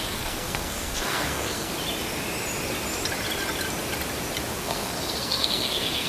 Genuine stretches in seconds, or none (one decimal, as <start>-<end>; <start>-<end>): 1.7-4.6